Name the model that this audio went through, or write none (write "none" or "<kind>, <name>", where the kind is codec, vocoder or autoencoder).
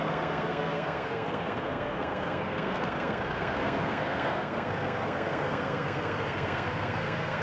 codec, SNAC